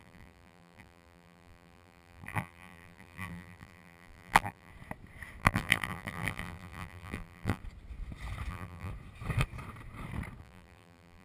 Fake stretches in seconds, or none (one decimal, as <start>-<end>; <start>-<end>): 0.0-4.7; 5.4-7.6; 8.5-8.9; 10.4-11.2